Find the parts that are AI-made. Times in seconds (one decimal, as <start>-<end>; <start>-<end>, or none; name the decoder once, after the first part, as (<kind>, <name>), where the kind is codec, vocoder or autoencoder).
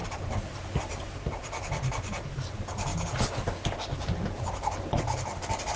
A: 0.0-2.9 (vocoder, BigVGAN v2); 4.4-5.8